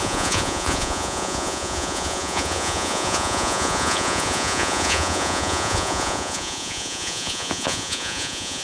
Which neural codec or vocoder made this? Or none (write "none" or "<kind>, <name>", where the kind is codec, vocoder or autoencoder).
vocoder, Vocos